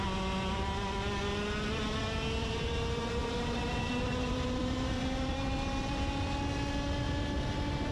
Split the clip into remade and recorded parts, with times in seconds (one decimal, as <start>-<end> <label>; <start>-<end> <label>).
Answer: 0.0-2.4 recorded; 2.4-6.1 remade; 6.1-7.9 recorded